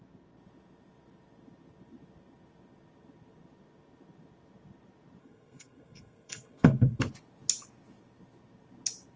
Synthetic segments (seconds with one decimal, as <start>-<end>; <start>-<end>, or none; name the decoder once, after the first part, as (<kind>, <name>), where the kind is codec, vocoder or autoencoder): 5.2-7.0 (codec, SNAC)